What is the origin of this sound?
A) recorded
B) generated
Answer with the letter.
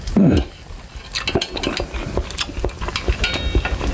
A